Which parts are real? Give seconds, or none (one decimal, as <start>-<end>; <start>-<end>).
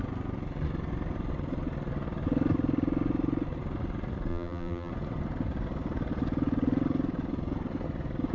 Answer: 0.0-4.3; 4.9-8.3